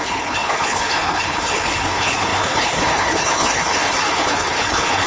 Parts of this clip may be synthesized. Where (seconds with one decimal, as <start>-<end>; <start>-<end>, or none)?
0.0-5.1